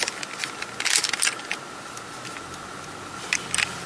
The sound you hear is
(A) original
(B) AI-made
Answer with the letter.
A